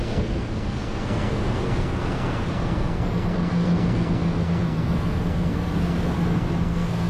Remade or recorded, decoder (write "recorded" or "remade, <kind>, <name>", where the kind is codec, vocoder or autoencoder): remade, codec, SNAC